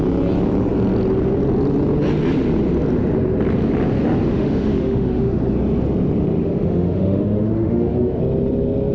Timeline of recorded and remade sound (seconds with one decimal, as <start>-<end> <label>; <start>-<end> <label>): 0.0-4.3 recorded; 4.3-5.4 remade; 5.4-6.4 recorded; 6.4-8.2 remade; 8.2-8.9 recorded